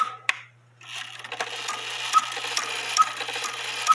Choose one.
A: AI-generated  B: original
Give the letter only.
B